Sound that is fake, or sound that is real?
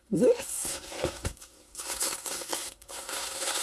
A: fake